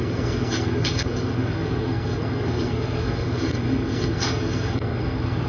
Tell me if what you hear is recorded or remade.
remade